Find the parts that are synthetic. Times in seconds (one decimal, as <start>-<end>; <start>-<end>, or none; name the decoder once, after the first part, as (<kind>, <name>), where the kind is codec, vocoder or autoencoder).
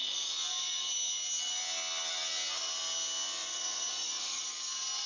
3.4-4.4 (vocoder, Vocos)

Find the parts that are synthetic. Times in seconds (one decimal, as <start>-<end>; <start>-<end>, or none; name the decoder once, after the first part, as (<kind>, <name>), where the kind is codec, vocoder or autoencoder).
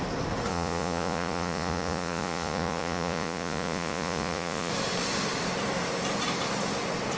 0.5-4.7 (vocoder, Vocos)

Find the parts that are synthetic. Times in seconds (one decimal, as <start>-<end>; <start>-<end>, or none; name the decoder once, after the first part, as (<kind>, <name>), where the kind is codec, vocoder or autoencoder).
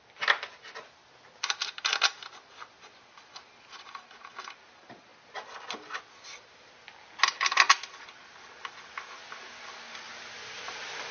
none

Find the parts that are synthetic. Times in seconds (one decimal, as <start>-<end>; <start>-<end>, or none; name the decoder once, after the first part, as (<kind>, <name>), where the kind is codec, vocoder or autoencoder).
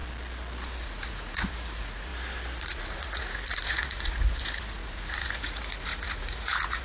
0.8-2.1 (vocoder, Vocos); 2.6-6.8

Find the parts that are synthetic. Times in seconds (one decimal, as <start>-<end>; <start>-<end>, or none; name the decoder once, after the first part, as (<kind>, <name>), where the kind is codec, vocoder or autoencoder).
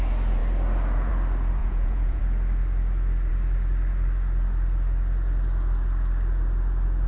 1.6-2.2 (vocoder, Vocos)